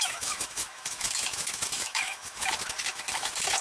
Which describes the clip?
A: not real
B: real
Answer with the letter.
A